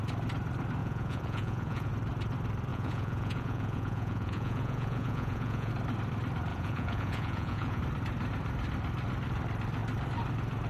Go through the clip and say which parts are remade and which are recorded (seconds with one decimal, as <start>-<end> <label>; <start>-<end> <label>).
0.0-0.8 recorded; 0.8-1.9 remade; 1.9-2.7 recorded; 2.7-5.7 remade; 5.7-6.5 recorded; 6.5-7.8 remade; 7.8-10.7 recorded